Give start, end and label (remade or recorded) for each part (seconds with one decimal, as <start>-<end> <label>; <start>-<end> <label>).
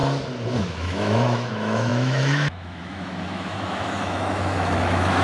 0.0-0.6 recorded; 0.6-5.2 remade